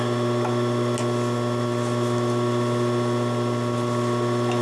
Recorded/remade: recorded